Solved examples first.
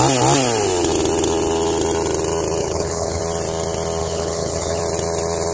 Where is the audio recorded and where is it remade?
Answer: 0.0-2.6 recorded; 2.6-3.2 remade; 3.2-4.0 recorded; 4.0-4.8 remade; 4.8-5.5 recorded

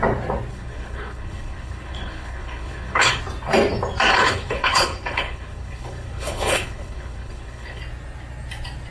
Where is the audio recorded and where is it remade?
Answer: 0.0-0.5 recorded; 0.5-3.2 remade; 3.2-4.1 recorded; 4.1-7.8 remade; 7.8-8.9 recorded

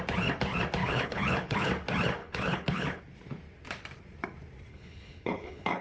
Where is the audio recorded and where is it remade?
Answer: 0.0-0.8 recorded; 0.8-1.7 remade; 1.7-2.2 recorded; 2.2-3.0 remade; 3.0-4.7 recorded; 4.7-5.8 remade

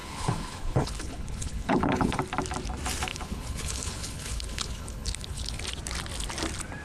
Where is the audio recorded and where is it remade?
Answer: 0.0-2.2 remade; 2.2-3.1 recorded; 3.1-5.6 remade; 5.6-6.8 recorded

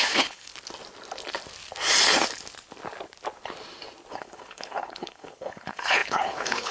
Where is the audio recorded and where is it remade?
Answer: 0.0-0.5 remade; 0.5-4.1 recorded; 4.1-6.7 remade

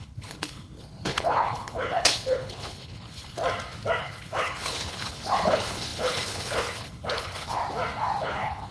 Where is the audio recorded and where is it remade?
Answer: 0.0-3.4 remade; 3.4-4.0 recorded; 4.0-7.6 remade; 7.6-8.2 recorded; 8.2-8.7 remade